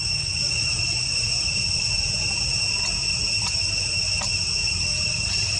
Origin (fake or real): fake